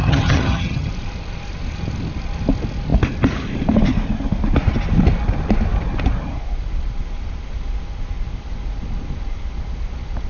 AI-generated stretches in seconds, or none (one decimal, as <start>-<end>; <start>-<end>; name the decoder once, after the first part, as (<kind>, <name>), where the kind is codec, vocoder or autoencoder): 0.0-0.9 (vocoder, HiFi-GAN)